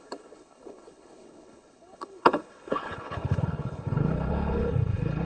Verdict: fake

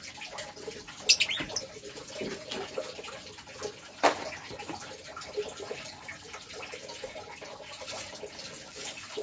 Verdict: real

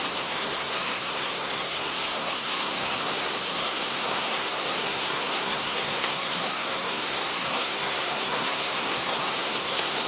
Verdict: fake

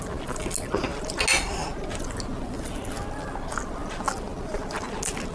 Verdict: real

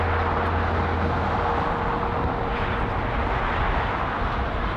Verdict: real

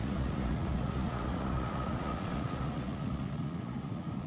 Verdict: fake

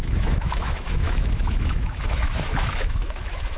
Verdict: fake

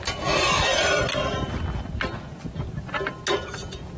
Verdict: real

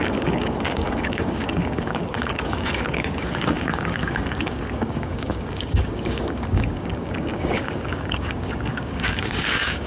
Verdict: fake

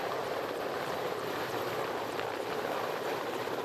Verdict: fake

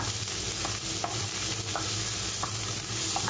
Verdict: real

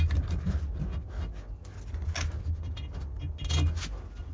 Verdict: real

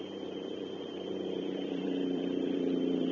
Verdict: fake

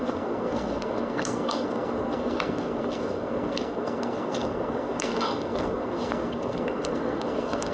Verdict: fake